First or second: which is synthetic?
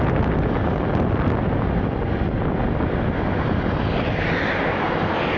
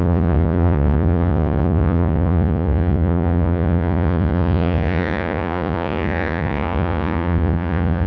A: second